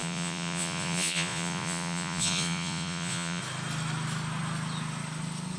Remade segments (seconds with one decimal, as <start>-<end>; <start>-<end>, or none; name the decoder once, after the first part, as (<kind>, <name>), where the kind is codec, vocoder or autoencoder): 0.0-3.4 (vocoder, Vocos)